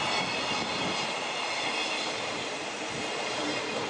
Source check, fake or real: real